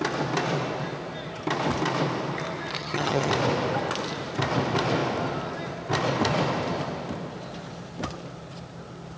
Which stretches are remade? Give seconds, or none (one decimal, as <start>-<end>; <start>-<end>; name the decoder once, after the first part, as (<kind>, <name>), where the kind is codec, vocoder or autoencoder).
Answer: 2.8-3.3 (vocoder, HiFi-GAN)